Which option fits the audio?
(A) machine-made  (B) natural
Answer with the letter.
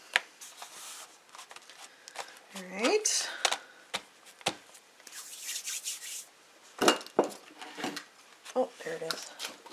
B